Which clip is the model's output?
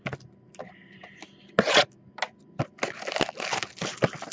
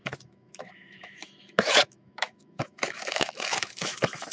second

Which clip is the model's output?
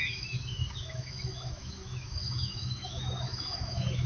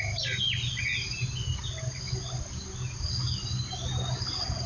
first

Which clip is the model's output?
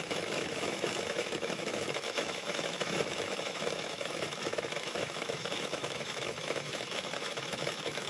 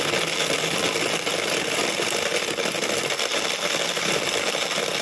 first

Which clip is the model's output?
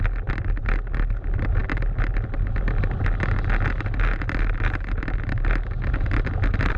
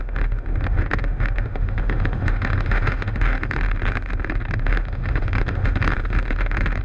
second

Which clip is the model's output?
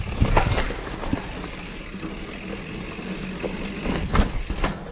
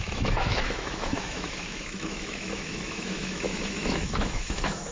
second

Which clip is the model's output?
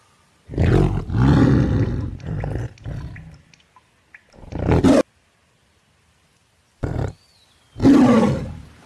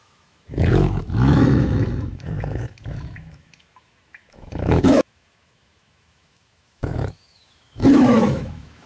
second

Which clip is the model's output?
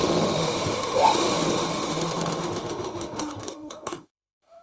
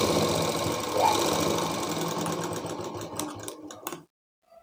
first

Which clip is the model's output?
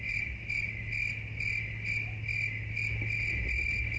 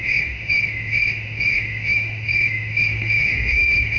second